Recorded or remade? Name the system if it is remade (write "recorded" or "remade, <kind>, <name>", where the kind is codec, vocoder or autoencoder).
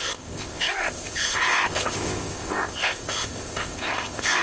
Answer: remade, codec, ZipCodec